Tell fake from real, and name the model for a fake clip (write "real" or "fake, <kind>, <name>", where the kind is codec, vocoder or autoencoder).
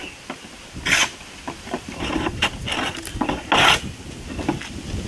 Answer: real